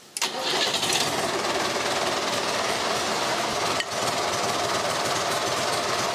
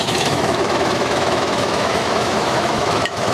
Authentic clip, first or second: first